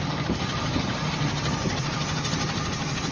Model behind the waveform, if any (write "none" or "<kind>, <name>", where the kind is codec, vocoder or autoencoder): none